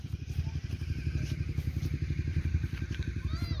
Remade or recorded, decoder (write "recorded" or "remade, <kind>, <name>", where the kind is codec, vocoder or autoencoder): recorded